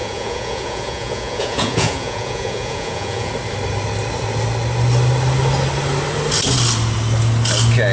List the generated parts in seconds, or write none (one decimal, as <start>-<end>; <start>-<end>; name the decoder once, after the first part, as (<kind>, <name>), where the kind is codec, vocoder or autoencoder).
0.0-3.3 (vocoder, Vocos)

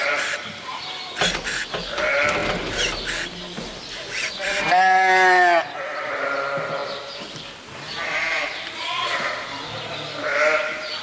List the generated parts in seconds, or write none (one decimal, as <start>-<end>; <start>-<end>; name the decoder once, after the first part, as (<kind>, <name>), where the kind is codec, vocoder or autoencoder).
none

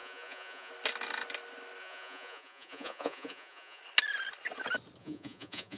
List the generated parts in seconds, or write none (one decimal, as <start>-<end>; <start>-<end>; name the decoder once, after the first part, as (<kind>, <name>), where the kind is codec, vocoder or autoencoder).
0.0-0.7 (vocoder, Vocos); 1.8-3.8; 5.0-5.8

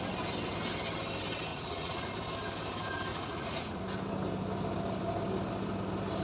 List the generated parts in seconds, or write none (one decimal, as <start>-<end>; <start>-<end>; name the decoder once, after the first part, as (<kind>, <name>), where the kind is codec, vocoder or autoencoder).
1.5-2.1 (vocoder, Vocos); 3.1-3.8